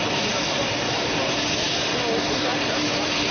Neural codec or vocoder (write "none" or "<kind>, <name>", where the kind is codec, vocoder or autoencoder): none